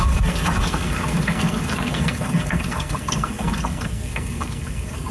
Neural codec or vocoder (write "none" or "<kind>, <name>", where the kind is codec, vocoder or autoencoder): codec, SNAC